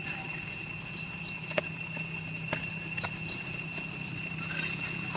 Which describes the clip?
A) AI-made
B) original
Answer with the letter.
B